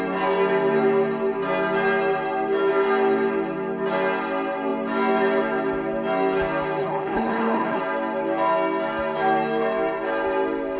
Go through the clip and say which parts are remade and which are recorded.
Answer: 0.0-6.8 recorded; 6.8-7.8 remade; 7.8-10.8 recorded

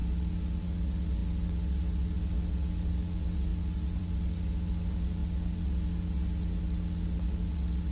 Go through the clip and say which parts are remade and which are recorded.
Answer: 0.0-7.9 remade

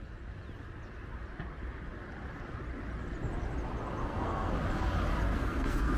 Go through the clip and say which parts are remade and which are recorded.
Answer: 0.0-4.0 recorded; 4.0-4.5 remade; 4.5-5.3 recorded; 5.3-6.0 remade